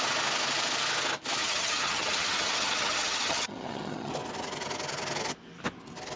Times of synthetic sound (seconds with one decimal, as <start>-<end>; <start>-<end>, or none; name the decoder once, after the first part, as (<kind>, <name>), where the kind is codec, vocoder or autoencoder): 1.4-4.1 (vocoder, HiFi-GAN)

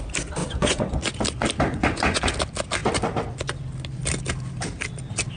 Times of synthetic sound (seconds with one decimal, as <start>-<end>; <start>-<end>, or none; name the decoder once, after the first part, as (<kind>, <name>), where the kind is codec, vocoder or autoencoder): 0.4-1.0 (vocoder, Vocos); 1.7-2.3

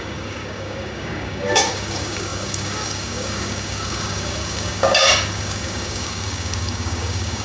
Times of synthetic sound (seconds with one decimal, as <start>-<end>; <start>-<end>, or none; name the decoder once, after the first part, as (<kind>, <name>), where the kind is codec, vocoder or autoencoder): 0.0-7.4 (codec, DAC)

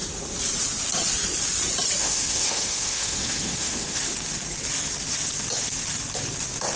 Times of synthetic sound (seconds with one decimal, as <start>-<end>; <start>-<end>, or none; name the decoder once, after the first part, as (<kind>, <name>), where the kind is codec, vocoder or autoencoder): 2.0-4.0 (autoencoder, DAC-VAE)